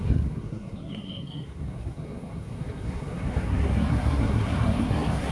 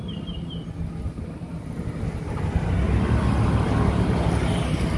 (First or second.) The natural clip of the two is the second